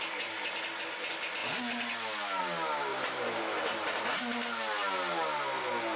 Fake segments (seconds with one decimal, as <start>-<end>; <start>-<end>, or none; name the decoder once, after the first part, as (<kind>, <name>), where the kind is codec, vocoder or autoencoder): 2.9-4.2 (vocoder, BigVGAN v2)